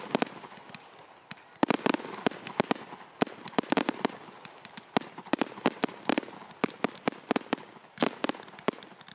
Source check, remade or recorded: recorded